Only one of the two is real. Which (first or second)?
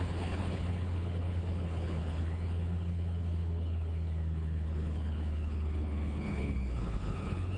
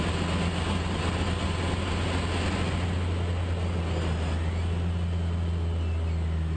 second